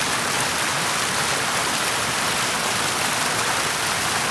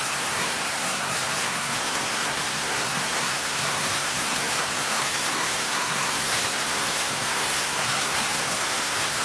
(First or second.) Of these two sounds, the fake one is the second